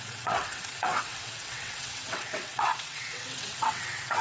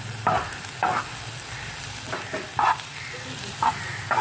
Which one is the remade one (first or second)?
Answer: first